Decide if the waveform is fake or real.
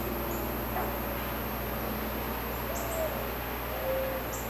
real